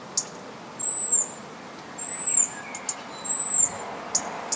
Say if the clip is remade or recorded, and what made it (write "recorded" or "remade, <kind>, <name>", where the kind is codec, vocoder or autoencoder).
recorded